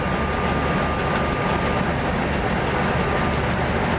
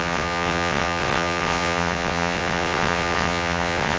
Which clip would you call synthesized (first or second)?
second